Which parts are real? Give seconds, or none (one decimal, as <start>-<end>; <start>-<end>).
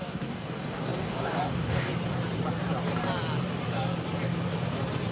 1.9-5.1